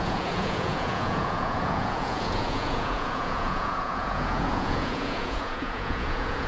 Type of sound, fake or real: fake